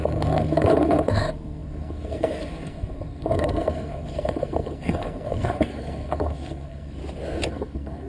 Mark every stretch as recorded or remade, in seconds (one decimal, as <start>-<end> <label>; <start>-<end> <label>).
0.0-7.0 remade; 7.0-7.5 recorded; 7.5-8.1 remade